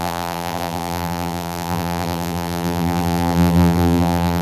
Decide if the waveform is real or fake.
fake